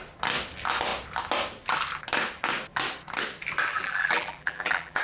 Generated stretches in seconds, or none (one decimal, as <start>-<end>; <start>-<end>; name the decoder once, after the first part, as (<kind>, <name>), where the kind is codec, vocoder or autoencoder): 3.7-5.0 (vocoder, BigVGAN v2)